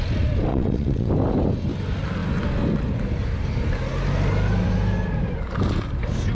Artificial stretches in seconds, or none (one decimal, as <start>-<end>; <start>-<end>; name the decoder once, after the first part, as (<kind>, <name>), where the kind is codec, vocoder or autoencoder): 0.5-1.1 (vocoder, WaveNeXt)